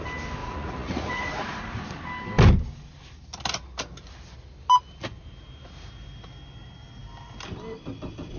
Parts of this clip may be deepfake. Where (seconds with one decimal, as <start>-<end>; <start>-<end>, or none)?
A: 0.4-1.7